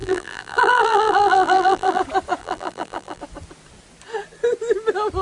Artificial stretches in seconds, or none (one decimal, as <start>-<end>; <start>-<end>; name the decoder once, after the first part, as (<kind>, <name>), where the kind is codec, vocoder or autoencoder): 0.0-2.0 (vocoder, BigVGAN v2); 2.4-3.2